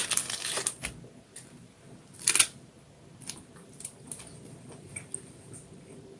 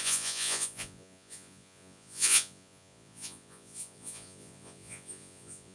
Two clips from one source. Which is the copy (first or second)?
second